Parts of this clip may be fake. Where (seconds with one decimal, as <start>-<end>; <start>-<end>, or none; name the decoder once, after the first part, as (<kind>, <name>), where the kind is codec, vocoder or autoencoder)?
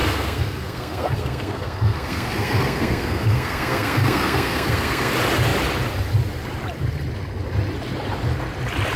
0.0-5.1 (codec, SNAC)